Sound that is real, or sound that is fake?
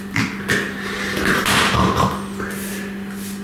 real